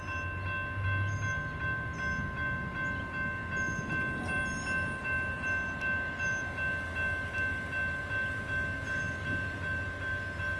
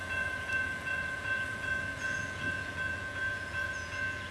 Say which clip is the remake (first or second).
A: second